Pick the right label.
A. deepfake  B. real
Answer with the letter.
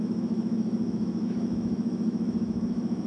A